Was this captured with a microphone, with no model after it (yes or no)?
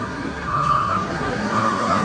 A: no